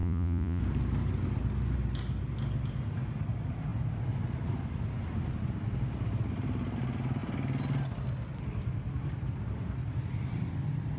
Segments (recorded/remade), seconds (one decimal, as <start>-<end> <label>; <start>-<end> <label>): 0.0-0.6 remade; 0.6-11.0 recorded